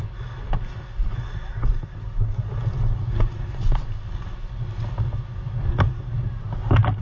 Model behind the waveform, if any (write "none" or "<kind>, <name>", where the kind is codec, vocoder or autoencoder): none